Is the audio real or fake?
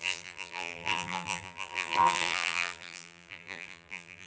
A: fake